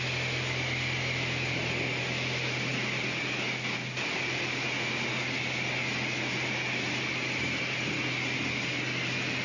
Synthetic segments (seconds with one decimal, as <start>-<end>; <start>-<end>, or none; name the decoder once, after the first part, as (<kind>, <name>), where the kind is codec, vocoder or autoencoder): none